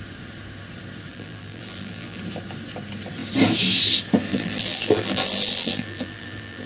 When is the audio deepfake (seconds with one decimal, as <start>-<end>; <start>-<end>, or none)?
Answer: 1.1-2.2; 4.3-6.7